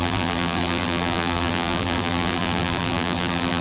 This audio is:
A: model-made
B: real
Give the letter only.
A